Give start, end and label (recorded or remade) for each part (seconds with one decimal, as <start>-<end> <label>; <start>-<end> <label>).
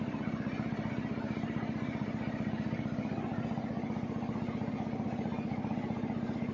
0.0-3.3 remade; 3.3-4.7 recorded; 4.7-6.5 remade